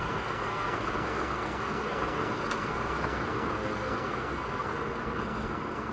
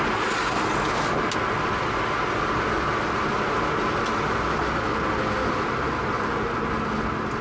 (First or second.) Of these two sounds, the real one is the second